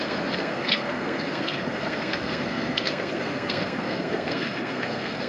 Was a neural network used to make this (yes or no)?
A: yes